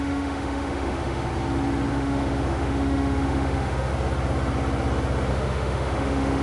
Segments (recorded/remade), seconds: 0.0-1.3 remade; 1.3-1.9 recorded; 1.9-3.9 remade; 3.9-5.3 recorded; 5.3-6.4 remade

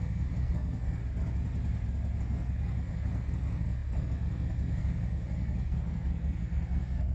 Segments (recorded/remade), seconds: 0.0-1.0 remade; 1.0-2.2 recorded; 2.2-7.1 remade